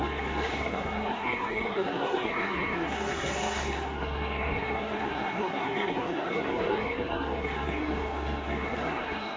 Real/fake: fake